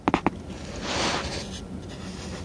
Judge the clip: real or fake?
real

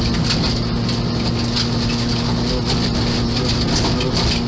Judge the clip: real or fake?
real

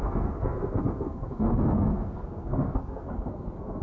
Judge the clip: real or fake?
fake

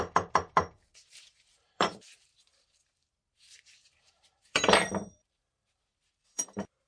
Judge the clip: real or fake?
fake